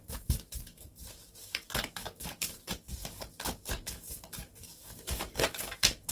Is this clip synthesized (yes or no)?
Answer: yes